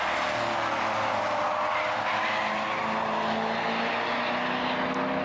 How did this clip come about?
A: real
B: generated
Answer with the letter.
A